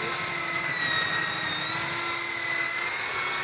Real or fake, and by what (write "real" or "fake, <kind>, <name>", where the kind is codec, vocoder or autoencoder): real